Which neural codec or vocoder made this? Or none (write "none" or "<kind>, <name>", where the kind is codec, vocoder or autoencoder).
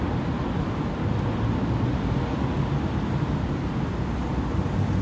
none